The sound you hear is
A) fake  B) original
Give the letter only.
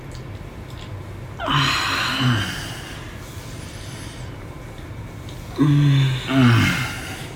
B